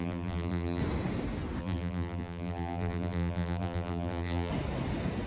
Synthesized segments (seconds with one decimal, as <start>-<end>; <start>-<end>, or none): 0.0-0.8; 1.6-4.5